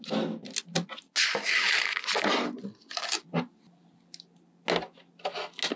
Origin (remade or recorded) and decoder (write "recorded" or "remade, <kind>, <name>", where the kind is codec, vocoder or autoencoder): recorded